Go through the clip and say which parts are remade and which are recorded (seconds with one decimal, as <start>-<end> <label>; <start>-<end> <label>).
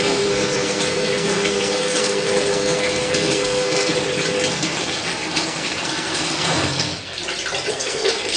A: 0.0-3.9 remade; 3.9-4.5 recorded; 4.5-7.2 remade; 7.2-7.7 recorded; 7.7-8.4 remade